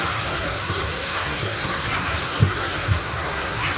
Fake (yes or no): yes